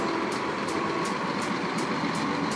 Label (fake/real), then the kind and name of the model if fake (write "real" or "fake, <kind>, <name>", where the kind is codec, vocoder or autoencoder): fake, vocoder, BigVGAN v2